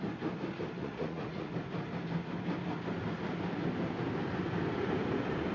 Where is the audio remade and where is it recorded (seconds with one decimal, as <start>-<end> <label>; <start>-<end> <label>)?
0.0-0.8 recorded; 0.8-1.5 remade; 1.5-5.5 recorded